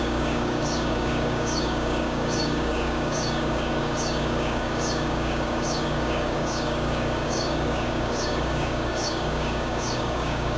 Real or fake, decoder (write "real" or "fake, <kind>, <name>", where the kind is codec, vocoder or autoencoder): fake, codec, DAC